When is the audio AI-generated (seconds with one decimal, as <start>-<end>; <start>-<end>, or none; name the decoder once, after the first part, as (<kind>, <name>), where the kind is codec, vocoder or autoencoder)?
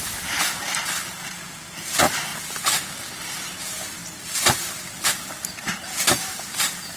0.0-2.3 (vocoder, BigVGAN v2); 3.5-7.0